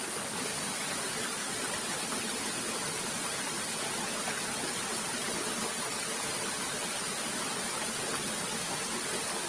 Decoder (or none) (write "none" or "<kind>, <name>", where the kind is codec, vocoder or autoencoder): none